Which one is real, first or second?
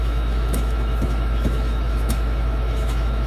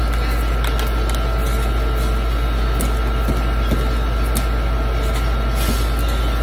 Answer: second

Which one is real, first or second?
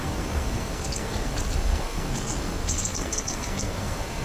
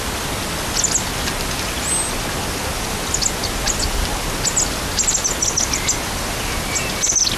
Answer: second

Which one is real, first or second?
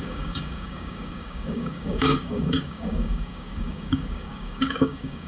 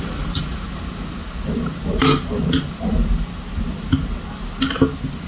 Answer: second